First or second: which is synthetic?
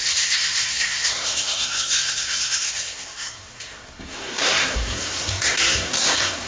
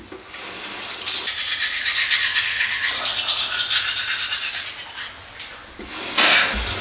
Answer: first